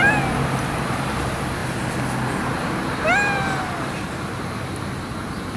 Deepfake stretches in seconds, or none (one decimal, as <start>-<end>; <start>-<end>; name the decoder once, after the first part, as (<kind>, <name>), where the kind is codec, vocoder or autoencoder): none